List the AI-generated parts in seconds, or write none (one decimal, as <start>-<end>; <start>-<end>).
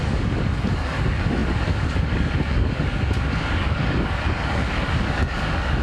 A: 0.0-5.8